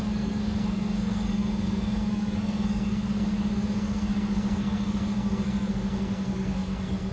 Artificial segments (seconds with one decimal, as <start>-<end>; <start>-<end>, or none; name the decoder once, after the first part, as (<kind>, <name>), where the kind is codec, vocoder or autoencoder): 0.0-7.1 (codec, SNAC)